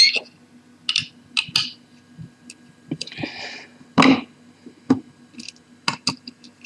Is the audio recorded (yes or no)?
yes